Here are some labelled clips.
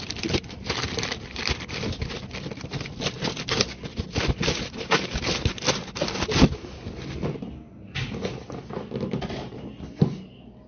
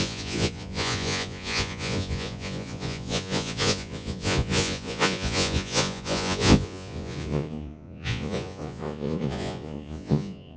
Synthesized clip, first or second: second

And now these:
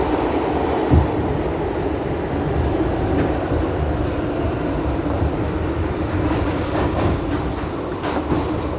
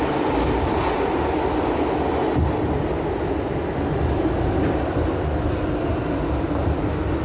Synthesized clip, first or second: first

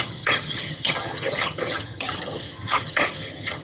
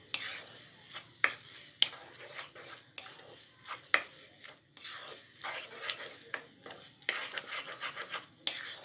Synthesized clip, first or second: first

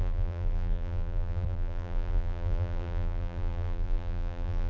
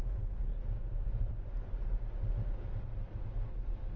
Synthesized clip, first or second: first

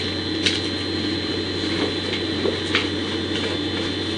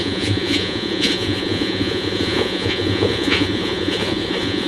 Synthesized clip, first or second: second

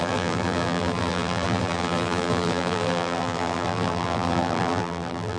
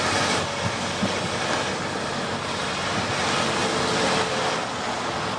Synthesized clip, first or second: first